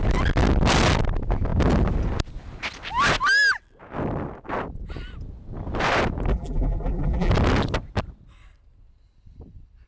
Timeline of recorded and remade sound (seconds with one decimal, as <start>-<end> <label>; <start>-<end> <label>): 0.0-6.3 recorded; 6.3-7.3 remade; 7.3-9.9 recorded